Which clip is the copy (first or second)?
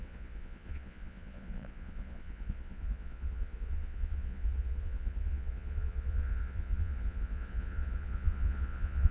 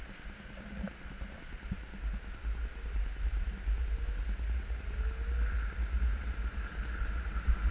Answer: first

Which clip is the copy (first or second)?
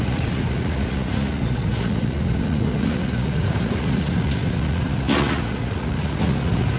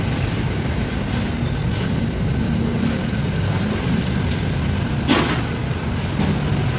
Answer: first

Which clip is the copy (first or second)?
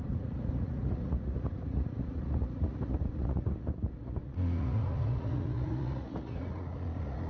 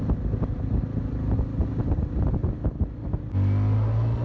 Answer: first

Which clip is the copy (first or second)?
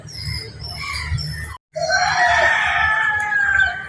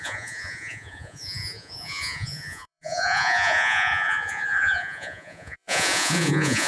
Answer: second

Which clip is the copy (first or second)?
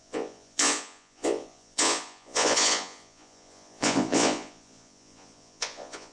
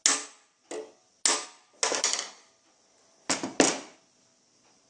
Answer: first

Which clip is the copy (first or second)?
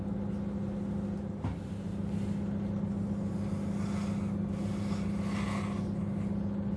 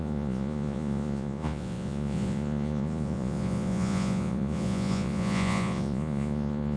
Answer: second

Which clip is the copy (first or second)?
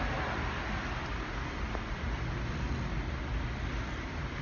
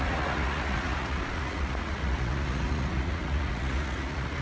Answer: second